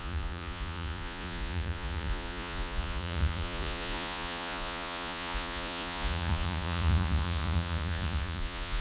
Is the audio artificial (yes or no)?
yes